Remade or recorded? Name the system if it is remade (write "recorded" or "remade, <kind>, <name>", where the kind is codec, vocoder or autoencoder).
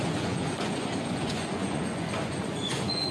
remade, vocoder, Vocos